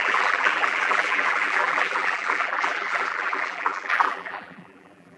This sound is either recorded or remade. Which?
remade